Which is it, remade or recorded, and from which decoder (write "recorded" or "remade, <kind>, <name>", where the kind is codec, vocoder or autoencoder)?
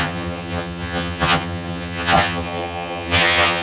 remade, vocoder, HiFi-GAN